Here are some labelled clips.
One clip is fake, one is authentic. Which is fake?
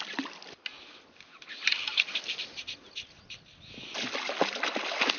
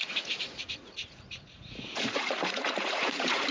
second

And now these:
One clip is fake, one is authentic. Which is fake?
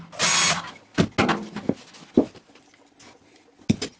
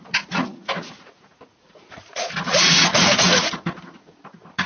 second